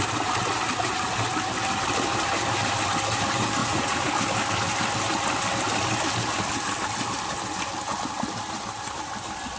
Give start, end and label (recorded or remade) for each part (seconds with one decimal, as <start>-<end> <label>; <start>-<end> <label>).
0.0-3.6 recorded; 3.6-4.1 remade; 4.1-9.6 recorded